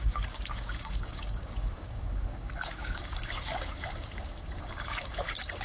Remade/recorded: remade